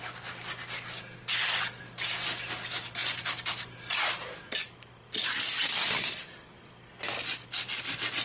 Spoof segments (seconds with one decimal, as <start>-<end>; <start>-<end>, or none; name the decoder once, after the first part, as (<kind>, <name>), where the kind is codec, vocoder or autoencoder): none